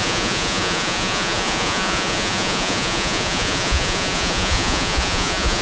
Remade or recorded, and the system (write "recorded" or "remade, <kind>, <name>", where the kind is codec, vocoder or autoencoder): remade, vocoder, Vocos